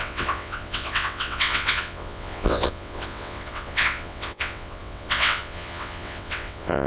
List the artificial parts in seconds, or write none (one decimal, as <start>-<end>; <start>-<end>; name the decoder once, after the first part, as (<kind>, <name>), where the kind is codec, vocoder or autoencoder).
0.0-6.9 (vocoder, WaveNeXt)